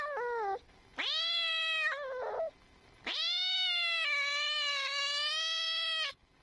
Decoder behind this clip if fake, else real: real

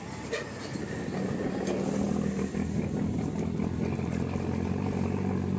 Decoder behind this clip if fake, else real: real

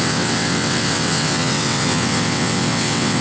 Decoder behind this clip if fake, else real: fake, vocoder, WaveNeXt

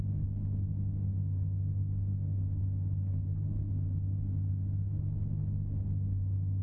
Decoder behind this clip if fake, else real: real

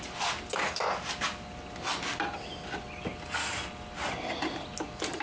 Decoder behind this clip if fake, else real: real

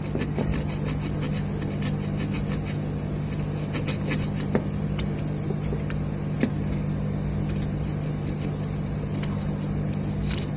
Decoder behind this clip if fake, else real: real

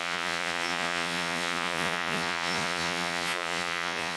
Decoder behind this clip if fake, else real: fake, vocoder, Vocos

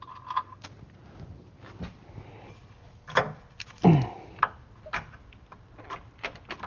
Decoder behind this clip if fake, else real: real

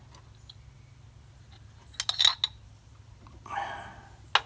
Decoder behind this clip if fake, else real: real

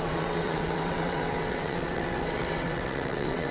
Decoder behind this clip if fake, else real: fake, vocoder, WaveNeXt